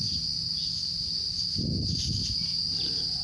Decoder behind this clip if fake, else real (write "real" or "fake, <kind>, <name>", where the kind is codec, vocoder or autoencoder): real